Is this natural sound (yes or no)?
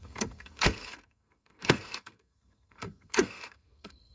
no